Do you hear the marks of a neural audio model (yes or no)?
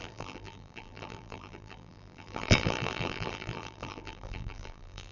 yes